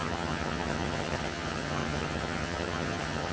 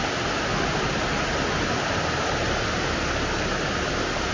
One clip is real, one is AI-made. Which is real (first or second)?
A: second